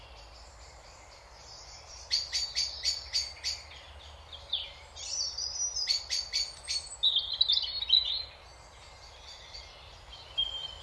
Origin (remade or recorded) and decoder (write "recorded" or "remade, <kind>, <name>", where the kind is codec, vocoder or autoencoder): recorded